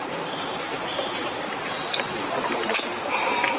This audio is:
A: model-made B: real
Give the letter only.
A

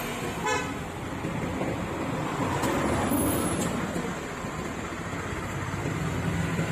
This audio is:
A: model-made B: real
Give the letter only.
B